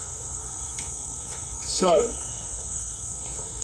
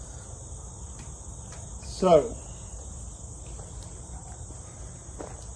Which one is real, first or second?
second